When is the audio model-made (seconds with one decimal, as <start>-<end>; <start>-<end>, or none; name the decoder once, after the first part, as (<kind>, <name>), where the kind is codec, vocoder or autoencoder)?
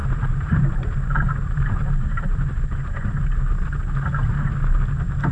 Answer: 0.0-3.2 (vocoder, BigVGAN v2)